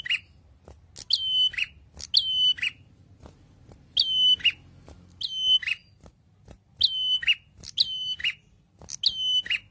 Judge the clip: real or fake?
real